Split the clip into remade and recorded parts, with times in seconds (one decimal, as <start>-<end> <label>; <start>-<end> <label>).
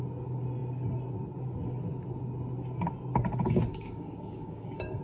0.0-3.7 recorded; 3.7-5.0 remade